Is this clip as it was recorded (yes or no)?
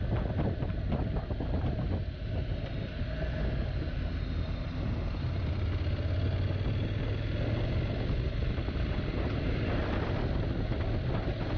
yes